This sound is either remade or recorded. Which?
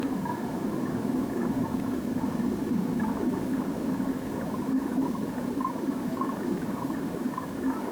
remade